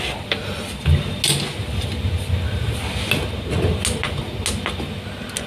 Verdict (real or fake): real